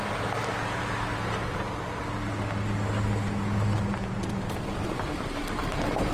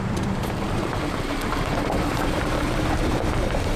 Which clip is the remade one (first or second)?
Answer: second